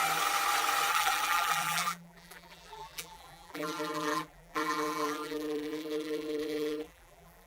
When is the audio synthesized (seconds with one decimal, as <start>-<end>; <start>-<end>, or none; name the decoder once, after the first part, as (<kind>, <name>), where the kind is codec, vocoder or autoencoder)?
0.9-7.5 (vocoder, BigVGAN v2)